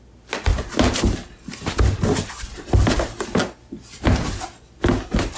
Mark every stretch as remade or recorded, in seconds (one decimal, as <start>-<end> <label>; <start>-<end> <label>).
0.0-5.4 recorded